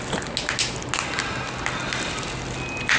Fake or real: real